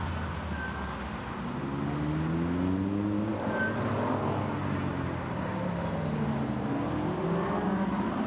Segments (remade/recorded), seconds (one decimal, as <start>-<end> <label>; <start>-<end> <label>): 0.0-8.3 recorded